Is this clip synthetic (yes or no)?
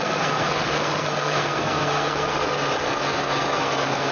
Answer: yes